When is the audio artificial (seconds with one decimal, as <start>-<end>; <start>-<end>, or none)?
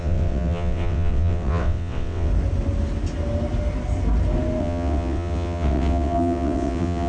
0.0-2.3; 4.6-7.1